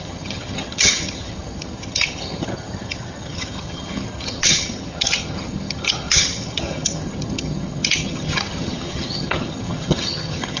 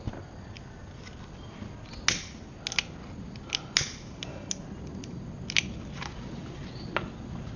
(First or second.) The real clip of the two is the second